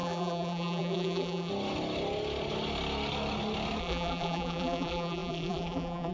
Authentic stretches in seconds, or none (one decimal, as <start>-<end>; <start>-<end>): 1.5-3.8